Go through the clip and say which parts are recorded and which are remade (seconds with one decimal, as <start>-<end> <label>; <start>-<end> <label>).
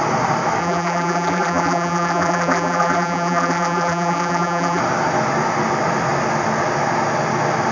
0.0-0.6 recorded; 0.6-4.8 remade; 4.8-7.7 recorded